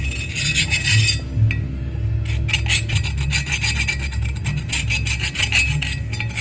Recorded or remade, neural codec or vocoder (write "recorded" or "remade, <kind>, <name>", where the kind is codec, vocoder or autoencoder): recorded